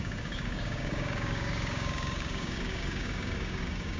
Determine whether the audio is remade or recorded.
remade